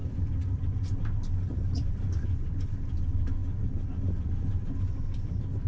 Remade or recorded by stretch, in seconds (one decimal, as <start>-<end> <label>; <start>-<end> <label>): 0.0-5.7 recorded